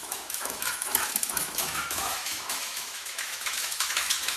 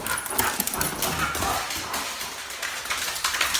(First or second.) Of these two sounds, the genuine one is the second